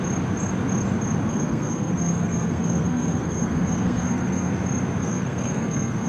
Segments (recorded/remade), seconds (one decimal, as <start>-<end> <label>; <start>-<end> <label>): 0.0-1.3 recorded; 1.3-4.5 remade; 4.5-5.0 recorded; 5.0-6.1 remade

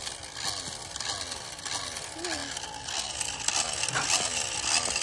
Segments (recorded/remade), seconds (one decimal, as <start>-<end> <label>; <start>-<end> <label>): 0.0-5.0 recorded